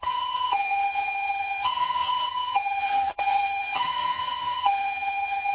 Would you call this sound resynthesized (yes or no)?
yes